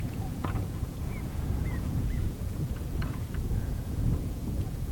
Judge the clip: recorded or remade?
remade